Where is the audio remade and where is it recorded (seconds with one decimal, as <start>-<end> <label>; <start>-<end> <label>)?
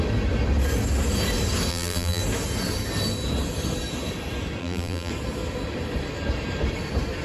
0.0-1.7 recorded; 1.7-2.2 remade; 2.2-4.6 recorded; 4.6-5.1 remade; 5.1-7.2 recorded